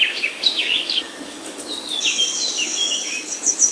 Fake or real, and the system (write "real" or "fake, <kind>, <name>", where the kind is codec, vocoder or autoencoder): fake, codec, DAC